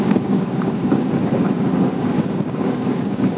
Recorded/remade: remade